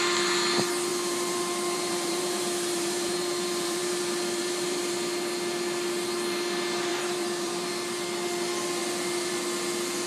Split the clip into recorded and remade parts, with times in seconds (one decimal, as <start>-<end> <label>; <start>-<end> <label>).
0.0-0.9 recorded; 0.9-4.9 remade; 4.9-6.9 recorded; 6.9-7.7 remade; 7.7-10.1 recorded